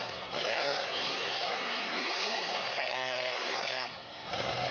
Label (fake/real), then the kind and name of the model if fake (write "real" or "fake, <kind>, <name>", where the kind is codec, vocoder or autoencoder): fake, codec, SNAC